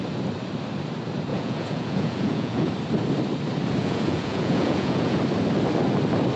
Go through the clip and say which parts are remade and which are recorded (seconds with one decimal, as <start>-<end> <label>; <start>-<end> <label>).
0.0-1.3 recorded; 1.3-2.7 remade; 2.7-3.8 recorded; 3.8-5.2 remade; 5.2-6.4 recorded